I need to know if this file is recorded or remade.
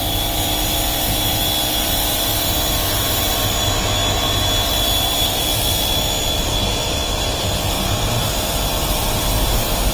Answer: recorded